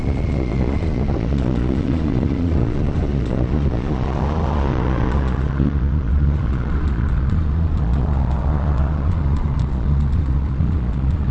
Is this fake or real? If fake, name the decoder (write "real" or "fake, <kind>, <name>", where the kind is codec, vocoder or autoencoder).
fake, vocoder, Vocos